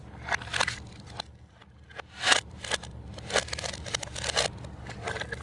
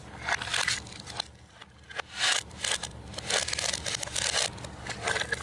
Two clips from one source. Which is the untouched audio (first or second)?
second